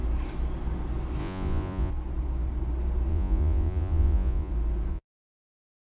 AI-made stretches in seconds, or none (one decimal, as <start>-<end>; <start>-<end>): 1.2-1.9; 3.1-4.5; 4.9-5.8